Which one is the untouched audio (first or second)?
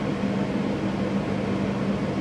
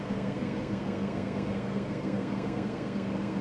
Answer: first